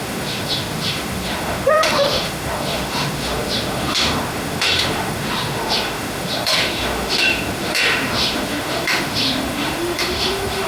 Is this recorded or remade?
remade